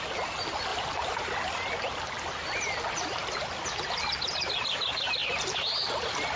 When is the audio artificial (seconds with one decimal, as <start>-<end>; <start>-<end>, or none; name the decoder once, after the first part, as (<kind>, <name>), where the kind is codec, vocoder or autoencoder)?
0.7-1.2 (vocoder, BigVGAN v2); 5.2-5.8